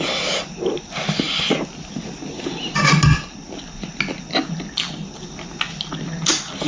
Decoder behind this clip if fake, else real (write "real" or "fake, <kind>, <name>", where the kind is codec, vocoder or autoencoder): real